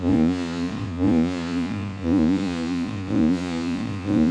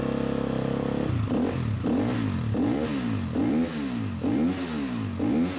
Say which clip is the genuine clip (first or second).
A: second